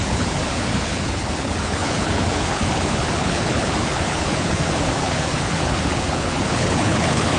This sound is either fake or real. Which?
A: fake